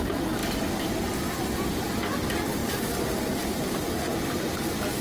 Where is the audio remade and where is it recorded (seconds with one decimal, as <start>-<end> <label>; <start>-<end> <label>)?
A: 0.0-0.4 remade; 0.4-1.5 recorded; 1.5-5.0 remade

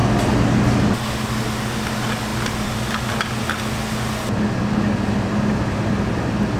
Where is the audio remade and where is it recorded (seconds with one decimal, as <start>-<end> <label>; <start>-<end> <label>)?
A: 0.0-2.3 recorded; 2.3-3.1 remade; 3.1-6.6 recorded